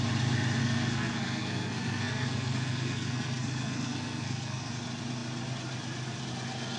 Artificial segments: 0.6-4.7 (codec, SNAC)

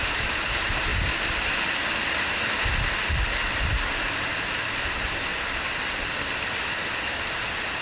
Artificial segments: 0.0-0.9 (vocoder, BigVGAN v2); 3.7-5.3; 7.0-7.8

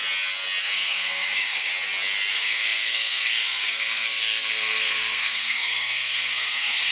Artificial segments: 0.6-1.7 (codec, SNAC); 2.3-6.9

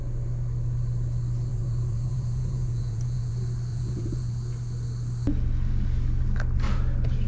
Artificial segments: 1.5-3.3 (vocoder, Vocos); 3.7-4.3

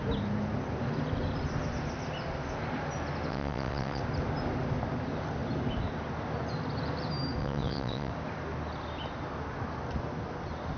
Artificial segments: 3.3-4.0 (vocoder, WaveNeXt); 7.4-8.1

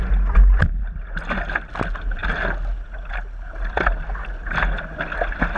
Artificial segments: none